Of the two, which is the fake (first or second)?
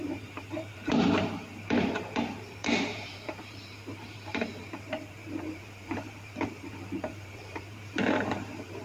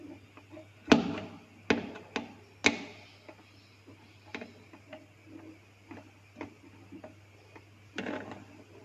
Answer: first